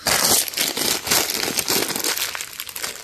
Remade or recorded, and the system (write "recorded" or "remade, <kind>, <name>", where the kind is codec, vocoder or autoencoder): recorded